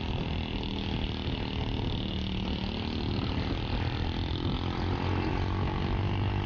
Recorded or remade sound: recorded